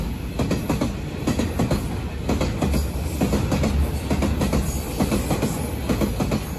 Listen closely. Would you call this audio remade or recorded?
recorded